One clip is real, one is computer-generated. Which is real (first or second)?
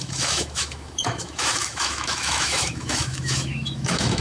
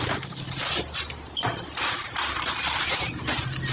second